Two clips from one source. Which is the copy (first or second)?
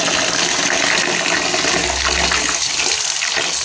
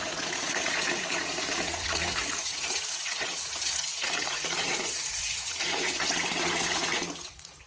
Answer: second